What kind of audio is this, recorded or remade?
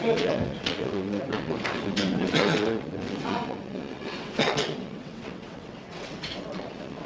remade